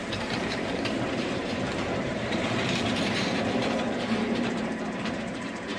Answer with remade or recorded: remade